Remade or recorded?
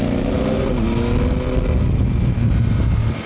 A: recorded